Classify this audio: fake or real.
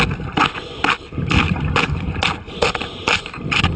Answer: real